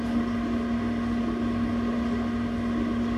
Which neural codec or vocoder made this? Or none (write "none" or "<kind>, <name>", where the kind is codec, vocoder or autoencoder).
none